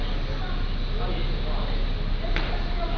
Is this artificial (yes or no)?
no